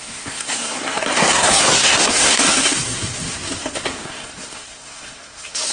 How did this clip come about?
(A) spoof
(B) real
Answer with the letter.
A